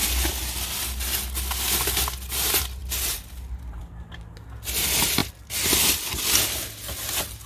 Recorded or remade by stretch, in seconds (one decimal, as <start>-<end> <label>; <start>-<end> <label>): 0.0-7.5 recorded